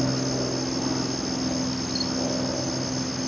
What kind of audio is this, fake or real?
real